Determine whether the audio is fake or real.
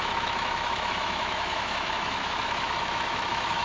fake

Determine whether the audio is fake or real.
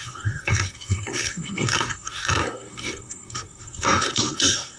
fake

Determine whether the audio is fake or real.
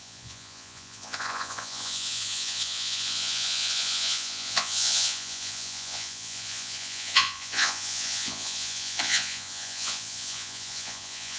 fake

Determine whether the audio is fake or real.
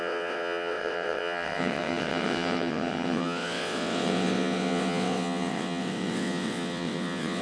fake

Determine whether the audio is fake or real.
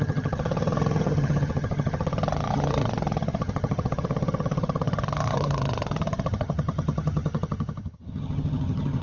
fake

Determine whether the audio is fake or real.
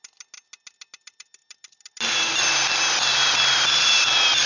real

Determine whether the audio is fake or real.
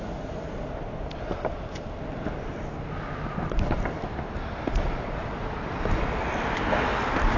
real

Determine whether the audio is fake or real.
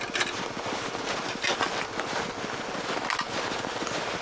real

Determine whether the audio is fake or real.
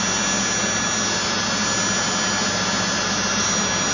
real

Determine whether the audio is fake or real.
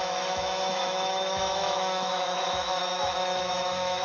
fake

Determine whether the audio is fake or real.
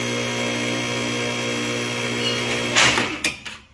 real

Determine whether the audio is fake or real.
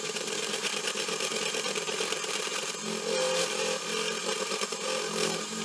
fake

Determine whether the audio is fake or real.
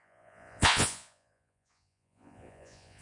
fake